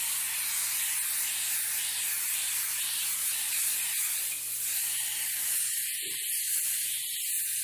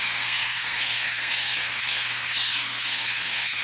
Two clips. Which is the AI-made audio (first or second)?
second